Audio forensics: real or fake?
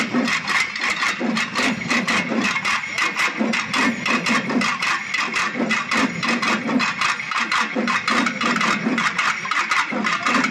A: real